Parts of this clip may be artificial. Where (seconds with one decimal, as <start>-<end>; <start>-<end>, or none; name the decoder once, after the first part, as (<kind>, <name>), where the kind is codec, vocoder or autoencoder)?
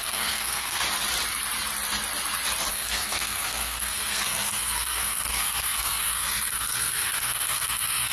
0.0-0.8 (codec, SNAC); 2.7-8.1